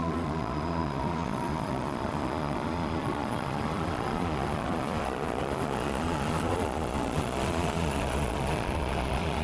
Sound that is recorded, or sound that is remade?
remade